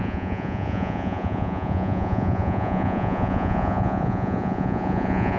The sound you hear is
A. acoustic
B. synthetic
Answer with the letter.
B